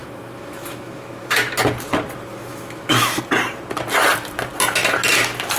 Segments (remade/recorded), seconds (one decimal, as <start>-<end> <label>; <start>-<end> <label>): 0.0-1.5 remade; 1.5-2.3 recorded; 2.3-3.2 remade; 3.2-5.6 recorded